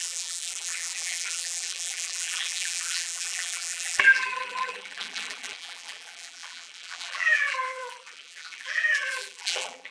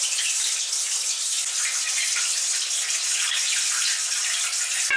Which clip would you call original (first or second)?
second